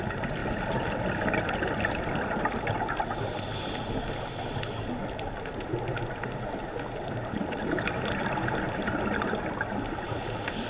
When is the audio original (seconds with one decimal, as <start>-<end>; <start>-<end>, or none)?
0.0-10.7